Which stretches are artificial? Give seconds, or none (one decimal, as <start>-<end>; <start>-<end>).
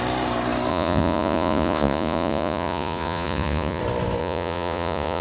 0.7-3.8; 4.2-5.2